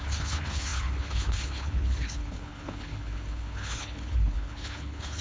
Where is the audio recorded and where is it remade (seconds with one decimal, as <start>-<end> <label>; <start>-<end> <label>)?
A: 0.0-5.2 remade